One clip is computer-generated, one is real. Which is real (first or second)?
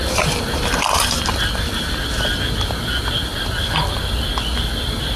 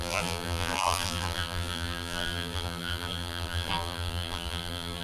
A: first